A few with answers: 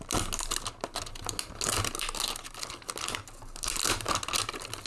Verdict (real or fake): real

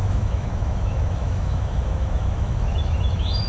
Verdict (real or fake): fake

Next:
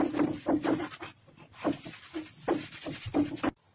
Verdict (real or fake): real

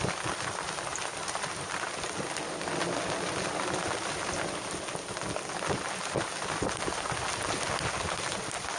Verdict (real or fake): real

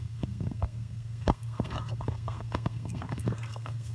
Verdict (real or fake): fake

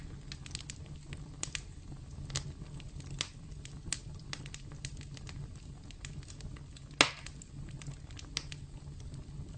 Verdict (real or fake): real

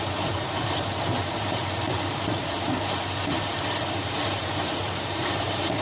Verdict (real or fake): fake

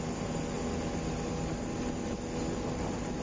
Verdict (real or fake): real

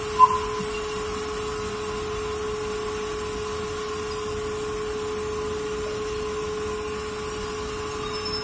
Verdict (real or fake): real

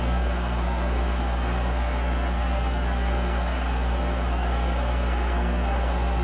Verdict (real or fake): fake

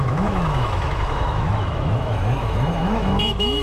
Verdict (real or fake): fake